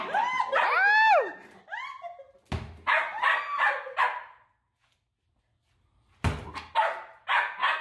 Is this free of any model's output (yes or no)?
yes